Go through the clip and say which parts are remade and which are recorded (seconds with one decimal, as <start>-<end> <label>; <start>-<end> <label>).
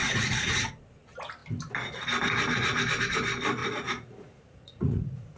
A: 0.0-0.7 remade; 0.7-3.6 recorded; 3.6-5.4 remade